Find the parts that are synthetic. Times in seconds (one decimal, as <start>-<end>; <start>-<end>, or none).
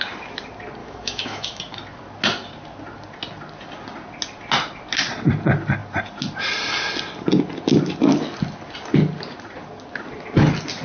0.8-1.6